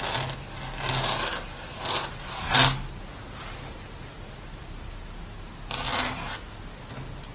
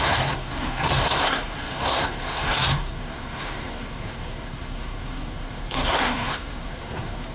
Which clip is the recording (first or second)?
first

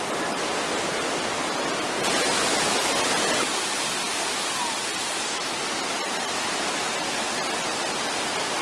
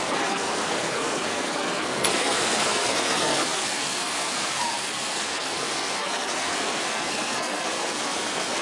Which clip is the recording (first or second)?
first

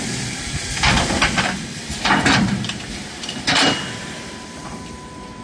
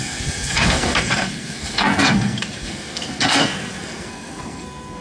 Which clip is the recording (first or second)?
first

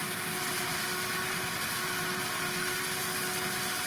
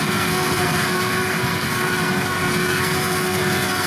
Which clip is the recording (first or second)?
first